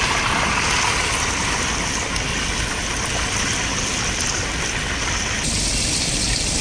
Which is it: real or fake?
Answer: real